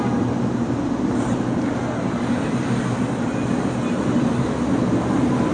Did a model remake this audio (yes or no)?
no